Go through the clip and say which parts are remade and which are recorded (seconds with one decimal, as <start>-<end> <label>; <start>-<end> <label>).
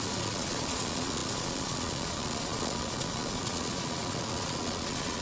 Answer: 0.0-5.2 remade